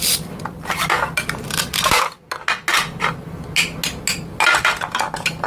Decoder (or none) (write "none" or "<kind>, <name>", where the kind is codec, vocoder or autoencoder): none